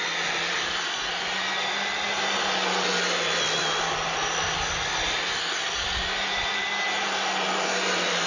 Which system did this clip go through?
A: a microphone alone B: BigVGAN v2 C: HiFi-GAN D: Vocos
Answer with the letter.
A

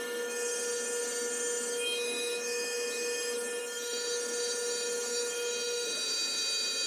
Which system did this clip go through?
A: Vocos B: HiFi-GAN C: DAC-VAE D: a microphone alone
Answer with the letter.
C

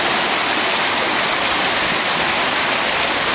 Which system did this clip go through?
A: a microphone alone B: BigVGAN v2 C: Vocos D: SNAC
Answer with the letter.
A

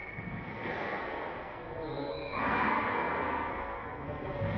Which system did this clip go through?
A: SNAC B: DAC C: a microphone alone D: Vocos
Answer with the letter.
A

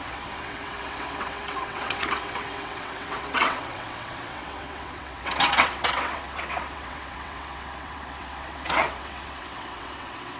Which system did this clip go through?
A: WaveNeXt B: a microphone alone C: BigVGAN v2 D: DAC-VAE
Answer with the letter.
A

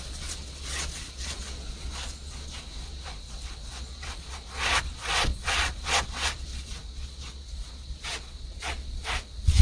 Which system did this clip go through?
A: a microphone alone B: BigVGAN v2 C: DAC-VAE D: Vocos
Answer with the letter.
D